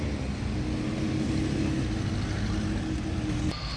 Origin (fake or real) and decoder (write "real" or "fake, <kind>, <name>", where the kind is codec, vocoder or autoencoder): real